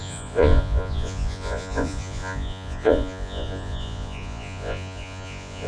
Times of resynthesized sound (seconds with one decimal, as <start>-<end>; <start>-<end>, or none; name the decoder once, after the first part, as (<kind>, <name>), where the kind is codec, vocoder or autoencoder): 0.0-5.7 (vocoder, Vocos)